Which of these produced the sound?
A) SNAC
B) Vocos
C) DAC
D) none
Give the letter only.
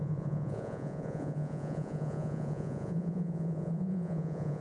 B